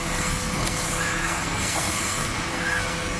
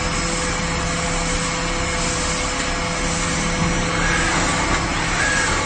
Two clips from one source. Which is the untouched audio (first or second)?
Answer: second